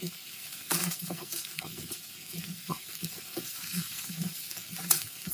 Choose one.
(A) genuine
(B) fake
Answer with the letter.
B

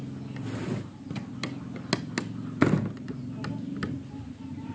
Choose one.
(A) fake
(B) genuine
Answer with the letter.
B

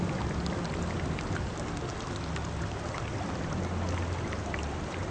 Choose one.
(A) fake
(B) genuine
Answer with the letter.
B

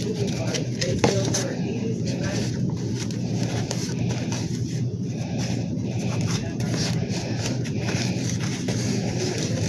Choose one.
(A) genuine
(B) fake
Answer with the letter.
B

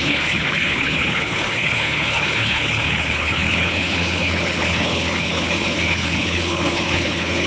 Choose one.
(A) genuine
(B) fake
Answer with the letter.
B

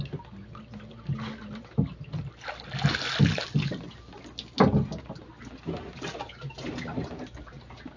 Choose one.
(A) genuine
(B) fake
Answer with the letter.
A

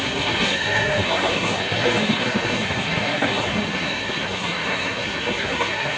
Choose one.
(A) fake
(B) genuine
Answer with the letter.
A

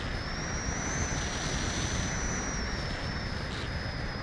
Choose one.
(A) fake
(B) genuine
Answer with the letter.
B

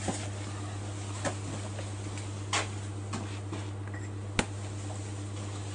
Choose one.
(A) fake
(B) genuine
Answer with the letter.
B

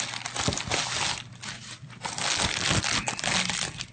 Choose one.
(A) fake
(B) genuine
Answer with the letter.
B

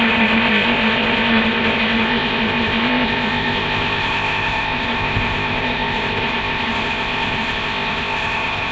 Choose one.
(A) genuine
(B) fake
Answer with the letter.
B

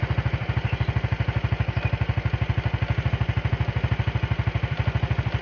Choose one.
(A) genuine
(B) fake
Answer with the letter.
A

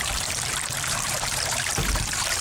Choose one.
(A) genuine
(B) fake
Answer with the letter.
B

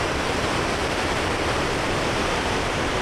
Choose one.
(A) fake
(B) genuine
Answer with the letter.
A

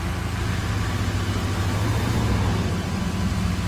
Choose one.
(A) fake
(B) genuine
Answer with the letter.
B